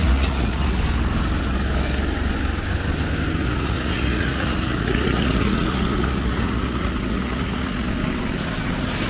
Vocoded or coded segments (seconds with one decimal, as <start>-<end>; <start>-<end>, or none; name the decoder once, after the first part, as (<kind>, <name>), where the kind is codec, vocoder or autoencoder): 0.0-0.8 (vocoder, Vocos); 3.4-7.9